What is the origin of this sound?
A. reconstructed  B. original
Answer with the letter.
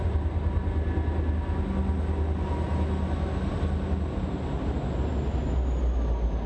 B